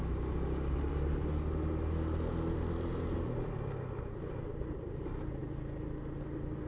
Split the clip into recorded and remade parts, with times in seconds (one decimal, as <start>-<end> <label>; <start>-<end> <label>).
0.0-6.7 recorded